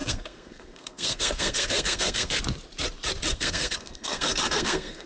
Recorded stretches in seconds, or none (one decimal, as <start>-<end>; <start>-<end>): 2.4-3.3